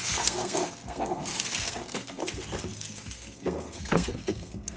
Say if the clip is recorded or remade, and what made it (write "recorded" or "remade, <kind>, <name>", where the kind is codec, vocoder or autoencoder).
remade, codec, SNAC